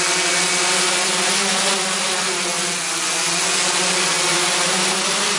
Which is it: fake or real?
real